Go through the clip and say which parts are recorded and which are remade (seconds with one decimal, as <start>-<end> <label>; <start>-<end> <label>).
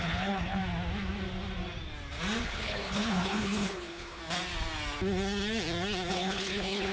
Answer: 0.0-0.6 remade; 0.6-2.4 recorded; 2.4-4.2 remade; 4.2-6.1 recorded; 6.1-6.9 remade